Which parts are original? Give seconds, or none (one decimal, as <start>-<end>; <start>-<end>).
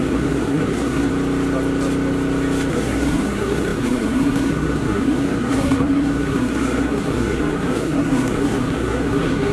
1.1-2.7